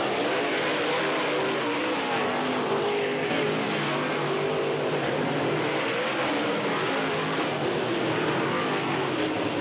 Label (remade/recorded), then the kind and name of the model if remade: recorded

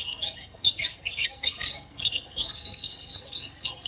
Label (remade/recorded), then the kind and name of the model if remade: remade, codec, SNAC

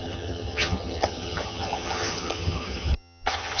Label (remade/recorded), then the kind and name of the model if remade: remade, vocoder, HiFi-GAN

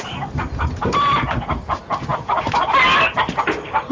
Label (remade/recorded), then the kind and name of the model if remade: recorded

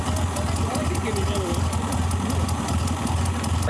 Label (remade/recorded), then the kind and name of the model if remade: recorded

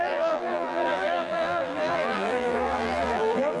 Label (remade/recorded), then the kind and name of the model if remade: remade, vocoder, BigVGAN v2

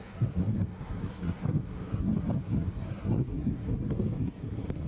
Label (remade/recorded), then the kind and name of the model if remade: remade, codec, SNAC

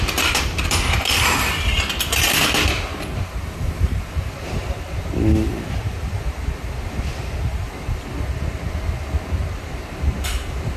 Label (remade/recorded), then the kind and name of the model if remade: recorded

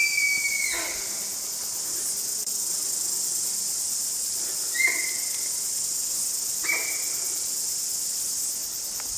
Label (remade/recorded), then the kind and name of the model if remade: recorded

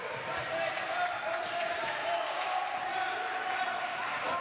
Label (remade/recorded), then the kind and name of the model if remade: recorded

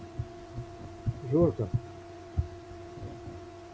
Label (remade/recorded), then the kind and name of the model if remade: remade, vocoder, Vocos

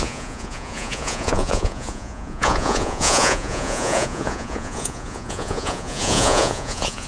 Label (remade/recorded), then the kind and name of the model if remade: remade, vocoder, Vocos